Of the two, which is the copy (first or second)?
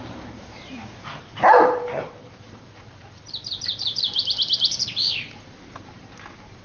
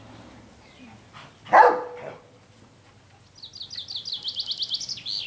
first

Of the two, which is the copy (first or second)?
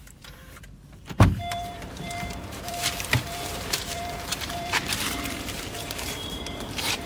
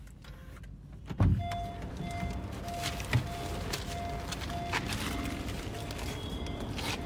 first